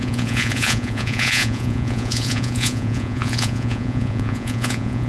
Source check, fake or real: fake